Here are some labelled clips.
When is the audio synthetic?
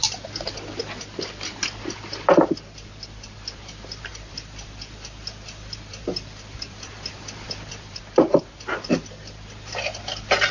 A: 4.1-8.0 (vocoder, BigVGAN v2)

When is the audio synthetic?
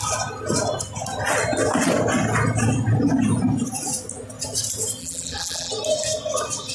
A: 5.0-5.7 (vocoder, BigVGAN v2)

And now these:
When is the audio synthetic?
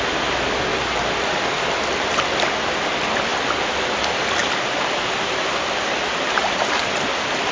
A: 0.7-1.6 (vocoder, BigVGAN v2); 4.4-6.9